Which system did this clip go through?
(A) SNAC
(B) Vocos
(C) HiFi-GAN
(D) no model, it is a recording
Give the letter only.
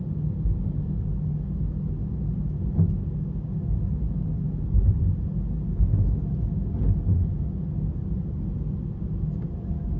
D